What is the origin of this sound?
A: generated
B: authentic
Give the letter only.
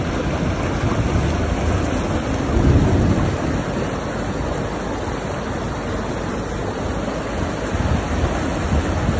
B